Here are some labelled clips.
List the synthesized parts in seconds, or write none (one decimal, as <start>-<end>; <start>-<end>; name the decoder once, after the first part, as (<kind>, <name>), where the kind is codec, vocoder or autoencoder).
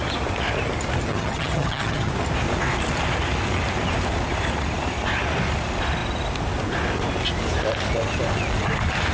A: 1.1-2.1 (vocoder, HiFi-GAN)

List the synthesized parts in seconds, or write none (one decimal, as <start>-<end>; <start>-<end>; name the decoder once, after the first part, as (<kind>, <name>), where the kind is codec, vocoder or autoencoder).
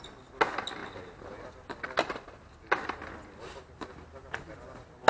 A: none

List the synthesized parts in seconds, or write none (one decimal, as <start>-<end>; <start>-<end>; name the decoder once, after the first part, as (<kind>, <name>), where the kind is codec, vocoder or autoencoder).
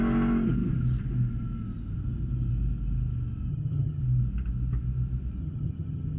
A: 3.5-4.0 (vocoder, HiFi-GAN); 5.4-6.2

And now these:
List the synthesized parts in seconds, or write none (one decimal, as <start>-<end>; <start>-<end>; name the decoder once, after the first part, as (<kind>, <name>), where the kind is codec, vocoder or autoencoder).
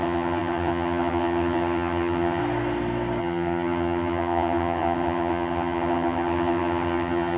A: 0.0-2.4 (vocoder, HiFi-GAN); 3.2-7.4